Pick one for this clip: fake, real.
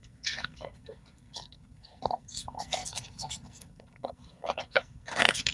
fake